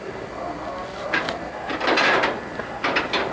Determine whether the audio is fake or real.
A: real